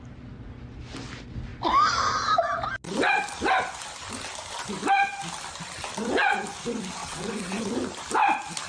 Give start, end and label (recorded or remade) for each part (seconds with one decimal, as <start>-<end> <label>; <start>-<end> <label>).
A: 0.0-7.0 recorded; 7.0-7.7 remade; 7.7-8.7 recorded